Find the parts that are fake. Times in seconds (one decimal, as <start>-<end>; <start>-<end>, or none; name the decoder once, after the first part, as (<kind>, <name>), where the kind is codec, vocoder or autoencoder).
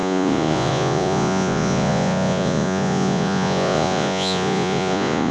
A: 0.0-5.3 (vocoder, Vocos)